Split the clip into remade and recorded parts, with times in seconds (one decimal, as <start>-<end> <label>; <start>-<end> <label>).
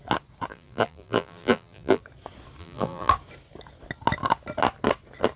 0.0-0.5 recorded; 0.5-2.0 remade; 2.0-2.6 recorded; 2.6-3.1 remade; 3.1-5.4 recorded